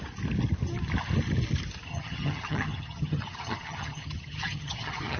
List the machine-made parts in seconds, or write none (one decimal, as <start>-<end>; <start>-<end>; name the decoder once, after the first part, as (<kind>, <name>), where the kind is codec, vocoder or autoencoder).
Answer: 1.9-5.2 (vocoder, HiFi-GAN)